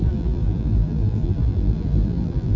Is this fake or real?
fake